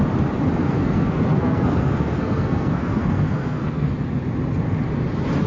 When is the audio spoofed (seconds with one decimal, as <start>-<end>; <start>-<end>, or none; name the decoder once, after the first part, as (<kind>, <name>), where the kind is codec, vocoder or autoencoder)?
0.6-3.9 (codec, SNAC)